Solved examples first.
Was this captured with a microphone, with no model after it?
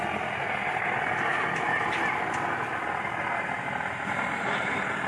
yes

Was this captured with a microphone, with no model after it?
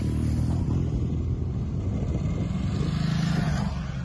yes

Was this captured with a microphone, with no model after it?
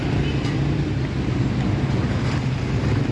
yes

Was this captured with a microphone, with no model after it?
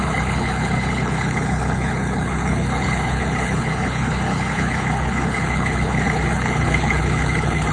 no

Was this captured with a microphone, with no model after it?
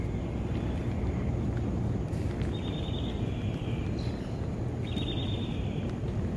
yes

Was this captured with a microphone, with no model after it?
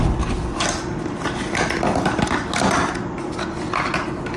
yes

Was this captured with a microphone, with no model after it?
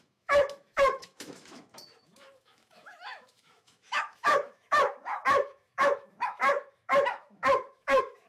no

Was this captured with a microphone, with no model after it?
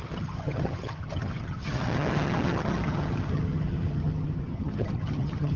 no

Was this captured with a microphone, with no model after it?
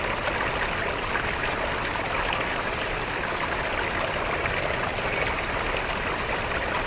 yes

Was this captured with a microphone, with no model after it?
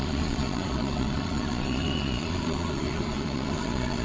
no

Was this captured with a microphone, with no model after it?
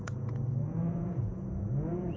no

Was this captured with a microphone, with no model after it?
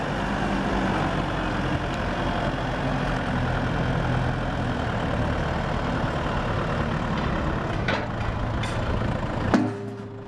yes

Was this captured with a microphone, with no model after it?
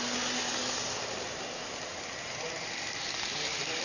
yes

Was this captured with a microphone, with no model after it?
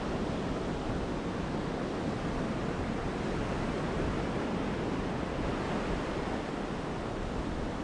yes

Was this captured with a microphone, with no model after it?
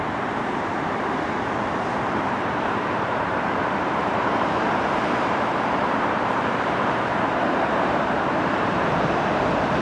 no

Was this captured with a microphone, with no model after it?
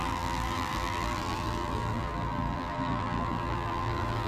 no